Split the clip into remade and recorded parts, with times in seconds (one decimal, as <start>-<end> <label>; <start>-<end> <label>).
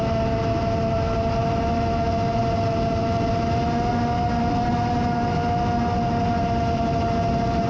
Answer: 0.0-7.7 recorded